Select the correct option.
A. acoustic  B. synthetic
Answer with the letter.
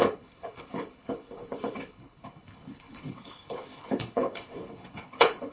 B